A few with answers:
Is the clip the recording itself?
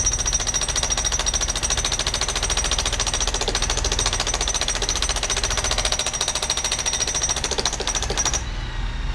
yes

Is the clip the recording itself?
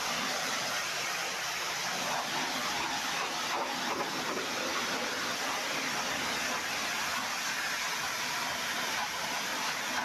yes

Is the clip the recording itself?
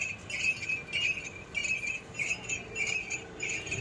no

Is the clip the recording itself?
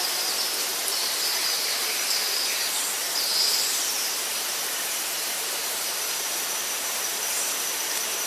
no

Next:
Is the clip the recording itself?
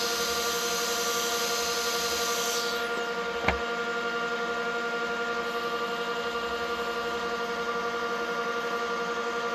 yes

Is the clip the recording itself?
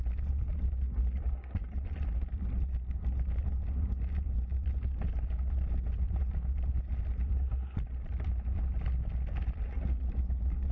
yes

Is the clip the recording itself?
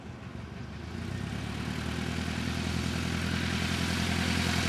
yes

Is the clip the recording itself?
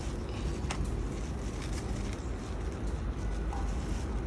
yes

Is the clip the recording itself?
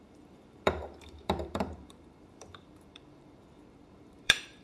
no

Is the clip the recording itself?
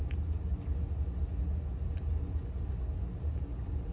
yes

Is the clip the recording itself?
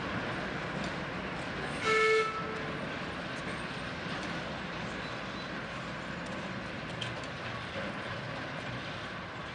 yes